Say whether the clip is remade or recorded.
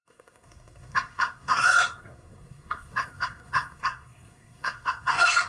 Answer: remade